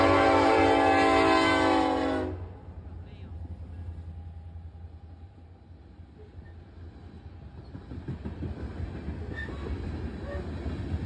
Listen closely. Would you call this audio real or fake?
real